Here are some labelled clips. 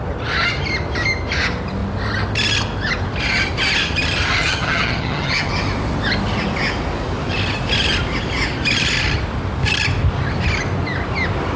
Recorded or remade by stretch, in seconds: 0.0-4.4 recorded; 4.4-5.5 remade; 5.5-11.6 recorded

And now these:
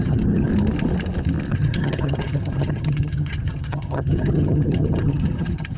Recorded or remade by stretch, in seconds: 0.0-0.5 remade; 0.5-1.5 recorded; 1.5-5.8 remade

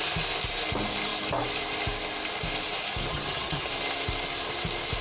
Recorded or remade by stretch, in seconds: 0.0-3.1 recorded; 3.1-3.7 remade; 3.7-5.0 recorded

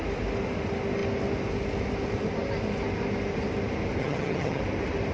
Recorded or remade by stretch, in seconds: 0.0-4.0 recorded; 4.0-4.6 remade; 4.6-5.1 recorded

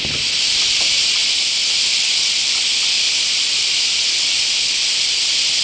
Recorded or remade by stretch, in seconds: 0.0-5.6 recorded

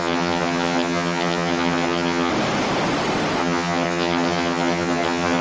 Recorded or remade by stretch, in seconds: 0.0-2.3 remade; 2.3-3.4 recorded; 3.4-5.4 remade

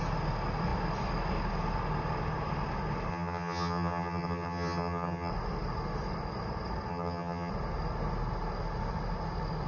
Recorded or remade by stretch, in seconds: 0.0-3.1 recorded; 3.1-5.3 remade; 5.3-6.9 recorded; 6.9-7.5 remade; 7.5-9.7 recorded